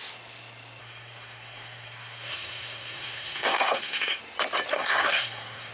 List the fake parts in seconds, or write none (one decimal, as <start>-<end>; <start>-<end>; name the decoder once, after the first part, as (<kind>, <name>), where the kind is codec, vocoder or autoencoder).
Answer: 0.8-4.2 (codec, SNAC); 4.7-5.7